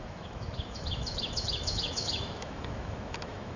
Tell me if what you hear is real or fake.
fake